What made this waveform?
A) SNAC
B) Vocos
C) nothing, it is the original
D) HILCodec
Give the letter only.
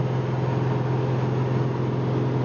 C